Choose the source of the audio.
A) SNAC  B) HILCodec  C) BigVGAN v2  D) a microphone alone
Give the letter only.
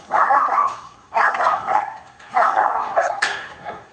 A